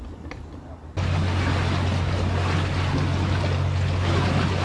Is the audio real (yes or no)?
yes